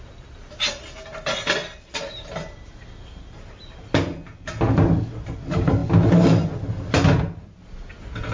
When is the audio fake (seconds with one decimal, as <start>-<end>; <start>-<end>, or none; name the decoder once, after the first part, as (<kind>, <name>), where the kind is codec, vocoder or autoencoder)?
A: none